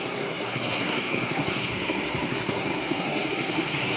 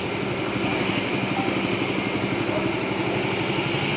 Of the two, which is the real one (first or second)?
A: second